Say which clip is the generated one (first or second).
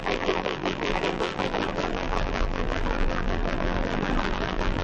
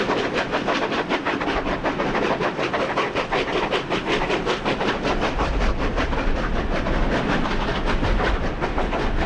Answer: first